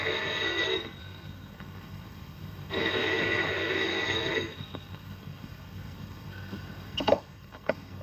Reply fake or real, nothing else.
fake